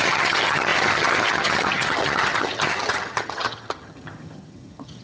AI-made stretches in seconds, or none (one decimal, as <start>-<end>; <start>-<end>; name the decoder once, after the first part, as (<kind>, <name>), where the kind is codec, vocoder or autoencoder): 0.0-5.0 (vocoder, HiFi-GAN)